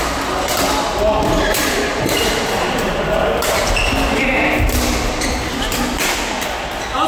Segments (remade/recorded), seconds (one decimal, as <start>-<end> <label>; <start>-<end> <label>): 0.0-7.1 recorded